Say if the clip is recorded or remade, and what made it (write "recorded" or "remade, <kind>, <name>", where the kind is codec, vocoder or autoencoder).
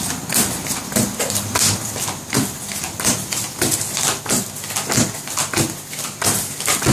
recorded